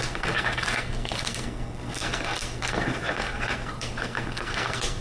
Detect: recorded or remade remade